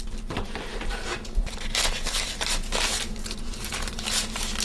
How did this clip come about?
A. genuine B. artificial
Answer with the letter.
A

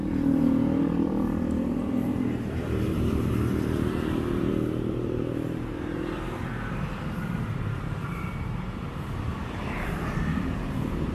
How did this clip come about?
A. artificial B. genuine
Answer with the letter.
A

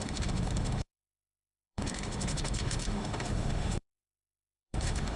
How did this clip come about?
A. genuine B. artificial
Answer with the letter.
B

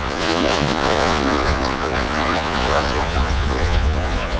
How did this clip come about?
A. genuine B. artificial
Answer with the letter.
B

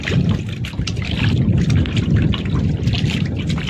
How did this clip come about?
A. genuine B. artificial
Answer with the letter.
B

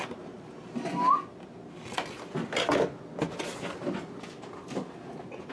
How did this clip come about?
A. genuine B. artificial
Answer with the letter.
A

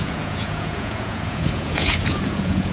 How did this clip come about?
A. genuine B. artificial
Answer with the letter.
B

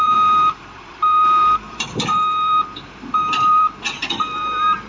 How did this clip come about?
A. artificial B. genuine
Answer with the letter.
A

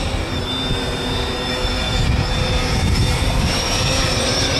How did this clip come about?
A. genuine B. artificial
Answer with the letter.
B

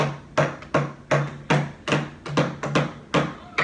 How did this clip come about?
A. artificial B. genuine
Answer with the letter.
B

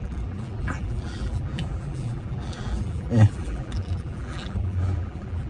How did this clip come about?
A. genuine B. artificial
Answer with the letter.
B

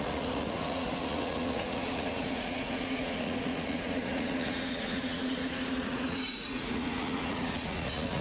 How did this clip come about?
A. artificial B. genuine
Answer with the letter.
A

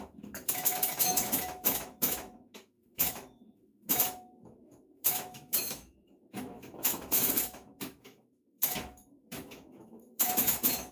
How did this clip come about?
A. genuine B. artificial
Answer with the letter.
B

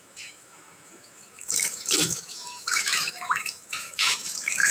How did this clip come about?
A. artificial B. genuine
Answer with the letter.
A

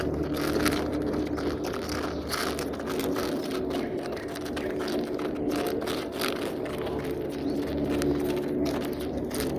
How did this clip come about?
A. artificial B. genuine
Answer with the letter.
B